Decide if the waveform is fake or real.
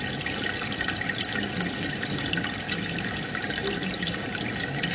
real